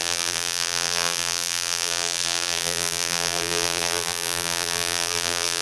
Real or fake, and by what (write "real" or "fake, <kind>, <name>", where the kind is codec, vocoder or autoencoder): fake, vocoder, BigVGAN v2